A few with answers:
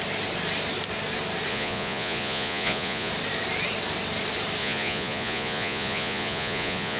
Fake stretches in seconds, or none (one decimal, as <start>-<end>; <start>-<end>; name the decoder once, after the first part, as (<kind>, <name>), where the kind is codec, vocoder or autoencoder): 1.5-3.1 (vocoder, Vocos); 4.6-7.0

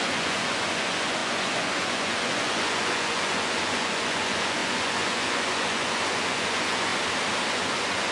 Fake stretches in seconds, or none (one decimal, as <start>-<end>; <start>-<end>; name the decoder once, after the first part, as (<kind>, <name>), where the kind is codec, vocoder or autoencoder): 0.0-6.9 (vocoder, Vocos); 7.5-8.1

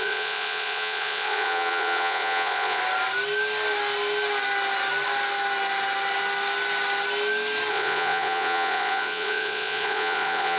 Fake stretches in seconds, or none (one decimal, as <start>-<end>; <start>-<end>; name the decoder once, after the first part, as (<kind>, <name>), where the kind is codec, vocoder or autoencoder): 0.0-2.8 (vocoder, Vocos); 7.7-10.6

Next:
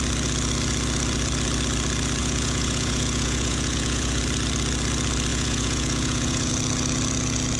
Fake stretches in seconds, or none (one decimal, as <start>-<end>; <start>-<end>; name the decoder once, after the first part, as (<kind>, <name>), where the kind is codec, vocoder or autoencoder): 2.2-4.2 (vocoder, Vocos); 5.3-6.5

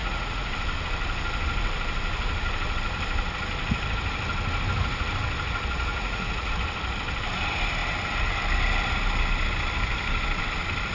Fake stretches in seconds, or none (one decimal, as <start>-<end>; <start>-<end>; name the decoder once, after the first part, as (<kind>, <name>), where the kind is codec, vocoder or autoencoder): 0.0-0.5 (vocoder, Vocos); 5.9-6.5